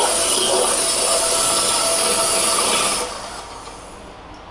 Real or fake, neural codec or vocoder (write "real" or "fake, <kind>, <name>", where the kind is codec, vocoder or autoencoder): real